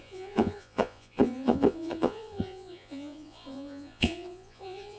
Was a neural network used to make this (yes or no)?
yes